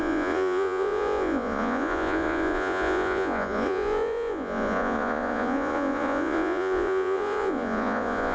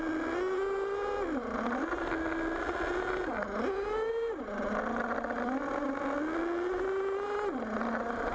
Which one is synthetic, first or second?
first